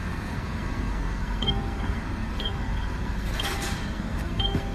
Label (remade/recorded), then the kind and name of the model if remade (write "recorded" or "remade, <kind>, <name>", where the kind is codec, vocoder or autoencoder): remade, codec, SNAC